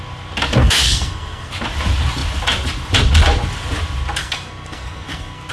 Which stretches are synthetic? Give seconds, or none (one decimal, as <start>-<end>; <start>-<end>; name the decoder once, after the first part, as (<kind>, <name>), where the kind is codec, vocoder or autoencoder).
0.6-1.5 (codec, SNAC); 4.2-5.5